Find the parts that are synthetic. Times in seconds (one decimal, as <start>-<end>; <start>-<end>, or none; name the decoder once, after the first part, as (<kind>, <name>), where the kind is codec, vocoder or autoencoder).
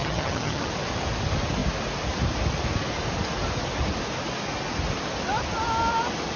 0.0-0.7 (vocoder, HiFi-GAN)